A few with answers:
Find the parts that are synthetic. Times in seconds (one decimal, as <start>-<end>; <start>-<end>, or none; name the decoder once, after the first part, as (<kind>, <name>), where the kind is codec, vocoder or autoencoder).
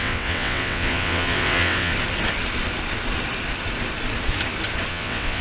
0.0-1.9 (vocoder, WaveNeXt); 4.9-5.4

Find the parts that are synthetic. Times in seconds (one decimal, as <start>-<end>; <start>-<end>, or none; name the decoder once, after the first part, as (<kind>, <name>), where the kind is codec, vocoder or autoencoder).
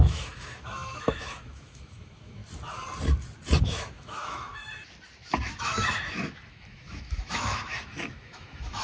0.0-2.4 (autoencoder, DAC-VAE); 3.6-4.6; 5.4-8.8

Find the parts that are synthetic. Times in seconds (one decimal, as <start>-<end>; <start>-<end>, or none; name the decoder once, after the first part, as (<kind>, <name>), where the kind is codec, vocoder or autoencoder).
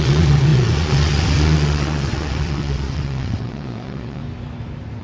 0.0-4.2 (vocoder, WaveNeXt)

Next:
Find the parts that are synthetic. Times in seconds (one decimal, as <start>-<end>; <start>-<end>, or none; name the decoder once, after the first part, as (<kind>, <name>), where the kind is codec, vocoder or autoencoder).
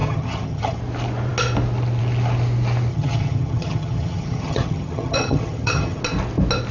0.0-0.8 (vocoder, HiFi-GAN); 2.9-6.0